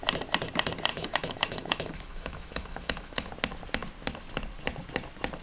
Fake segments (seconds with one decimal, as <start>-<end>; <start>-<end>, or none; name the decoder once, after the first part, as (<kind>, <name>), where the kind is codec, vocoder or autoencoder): 0.9-3.3 (autoencoder, DAC-VAE)